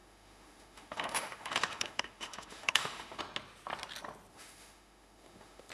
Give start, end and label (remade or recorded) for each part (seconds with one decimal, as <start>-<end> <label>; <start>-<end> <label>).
0.0-3.2 remade; 3.2-4.3 recorded; 4.3-5.7 remade